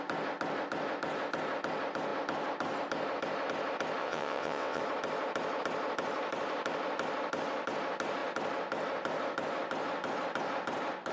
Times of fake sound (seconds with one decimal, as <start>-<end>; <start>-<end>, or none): 4.0-4.8